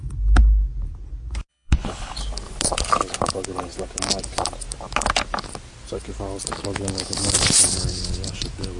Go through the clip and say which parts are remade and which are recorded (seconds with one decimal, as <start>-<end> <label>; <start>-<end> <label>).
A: 0.0-1.5 recorded; 1.5-2.2 remade; 2.2-8.8 recorded